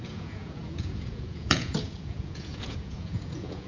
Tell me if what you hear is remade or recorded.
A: remade